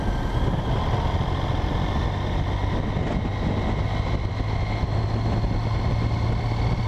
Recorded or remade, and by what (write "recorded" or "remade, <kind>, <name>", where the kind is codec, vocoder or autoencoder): recorded